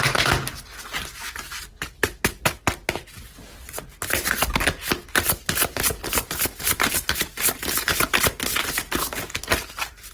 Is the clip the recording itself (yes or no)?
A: yes